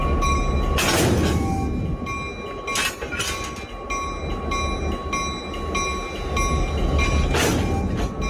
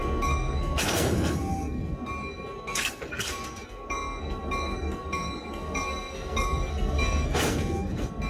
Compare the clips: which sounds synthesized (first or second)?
second